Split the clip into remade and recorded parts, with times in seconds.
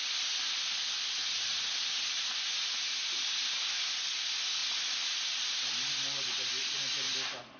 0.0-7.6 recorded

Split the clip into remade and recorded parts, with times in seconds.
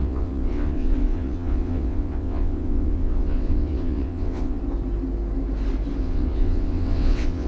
0.0-4.6 remade; 4.6-6.0 recorded; 6.0-7.5 remade